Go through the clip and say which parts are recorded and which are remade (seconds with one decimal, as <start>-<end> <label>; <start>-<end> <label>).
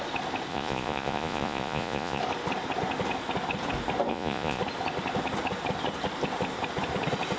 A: 0.0-0.5 recorded; 0.5-2.2 remade; 2.2-4.1 recorded; 4.1-4.6 remade; 4.6-7.4 recorded